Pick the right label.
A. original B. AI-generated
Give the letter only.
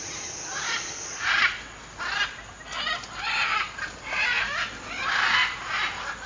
A